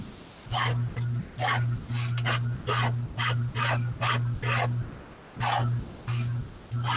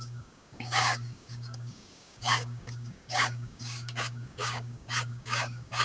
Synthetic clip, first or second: second